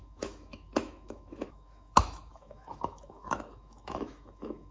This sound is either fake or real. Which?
fake